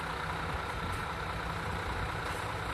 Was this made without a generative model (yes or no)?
yes